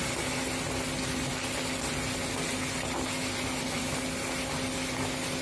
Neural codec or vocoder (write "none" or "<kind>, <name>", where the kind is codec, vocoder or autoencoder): none